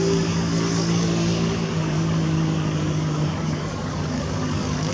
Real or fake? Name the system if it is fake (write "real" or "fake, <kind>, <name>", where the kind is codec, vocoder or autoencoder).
fake, codec, DAC